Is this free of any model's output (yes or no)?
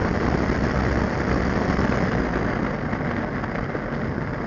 yes